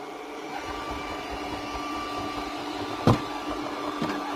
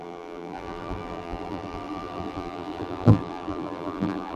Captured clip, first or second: first